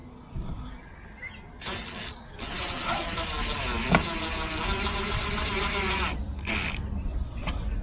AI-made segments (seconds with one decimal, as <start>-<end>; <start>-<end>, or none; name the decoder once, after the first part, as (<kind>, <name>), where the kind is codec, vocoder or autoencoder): none